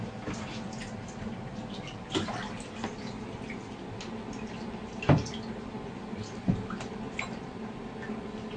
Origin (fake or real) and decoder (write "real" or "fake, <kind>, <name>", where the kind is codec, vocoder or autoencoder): fake, vocoder, BigVGAN v2